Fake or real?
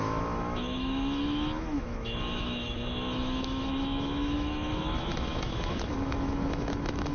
fake